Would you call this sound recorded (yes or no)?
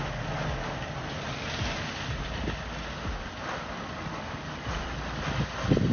yes